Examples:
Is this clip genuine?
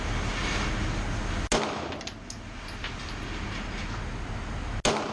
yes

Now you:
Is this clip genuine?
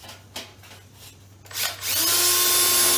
yes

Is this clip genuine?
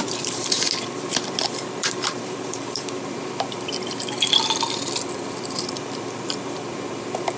no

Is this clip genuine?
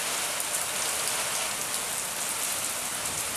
yes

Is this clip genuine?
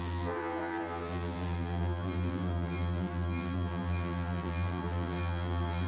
no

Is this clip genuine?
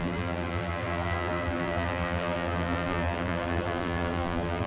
no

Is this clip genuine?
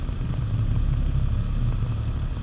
yes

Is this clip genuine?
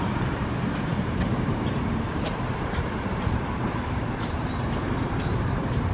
no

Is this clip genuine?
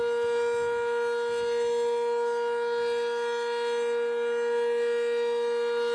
yes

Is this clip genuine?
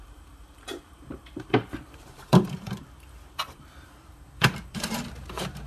no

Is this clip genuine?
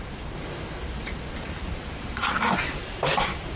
no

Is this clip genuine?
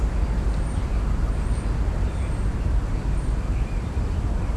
no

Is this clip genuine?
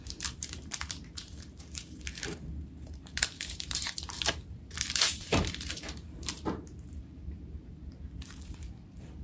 no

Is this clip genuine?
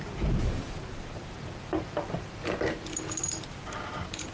no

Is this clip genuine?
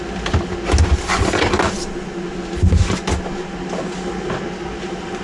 yes